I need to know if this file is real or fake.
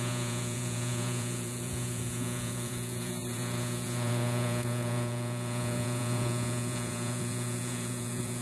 fake